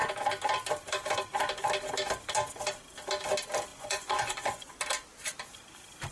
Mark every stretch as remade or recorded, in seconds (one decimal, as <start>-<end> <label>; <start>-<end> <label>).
0.0-3.7 recorded; 3.7-4.7 remade; 4.7-6.1 recorded